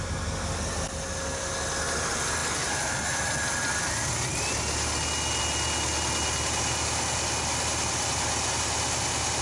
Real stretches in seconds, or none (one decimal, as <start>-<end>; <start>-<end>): 0.0-9.4